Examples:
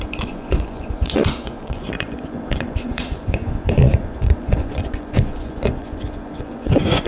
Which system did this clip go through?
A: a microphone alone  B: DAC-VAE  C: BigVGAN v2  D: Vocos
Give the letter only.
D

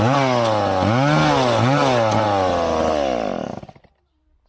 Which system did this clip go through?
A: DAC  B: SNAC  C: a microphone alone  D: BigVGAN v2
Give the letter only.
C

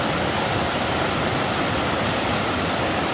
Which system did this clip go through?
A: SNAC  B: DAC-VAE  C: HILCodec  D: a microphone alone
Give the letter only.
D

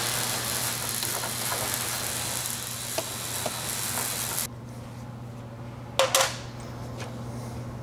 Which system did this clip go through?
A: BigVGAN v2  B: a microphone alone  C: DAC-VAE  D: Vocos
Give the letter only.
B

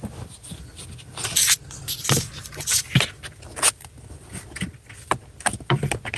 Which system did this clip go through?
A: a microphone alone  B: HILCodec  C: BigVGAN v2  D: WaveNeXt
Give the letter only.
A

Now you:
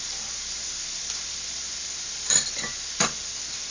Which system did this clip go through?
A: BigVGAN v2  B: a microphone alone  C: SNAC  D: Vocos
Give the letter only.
A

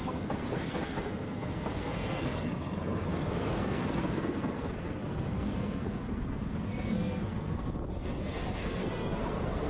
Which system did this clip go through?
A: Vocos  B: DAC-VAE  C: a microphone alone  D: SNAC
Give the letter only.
D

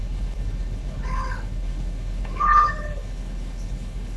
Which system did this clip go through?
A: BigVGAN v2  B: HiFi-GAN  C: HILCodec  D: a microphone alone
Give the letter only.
C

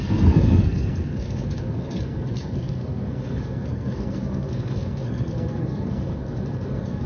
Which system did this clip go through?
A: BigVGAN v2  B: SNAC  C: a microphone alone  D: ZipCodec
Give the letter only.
B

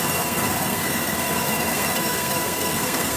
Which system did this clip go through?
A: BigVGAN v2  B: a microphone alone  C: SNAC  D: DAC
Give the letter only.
C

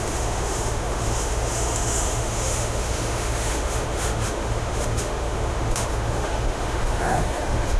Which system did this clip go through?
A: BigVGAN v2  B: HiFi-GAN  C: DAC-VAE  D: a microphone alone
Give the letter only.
C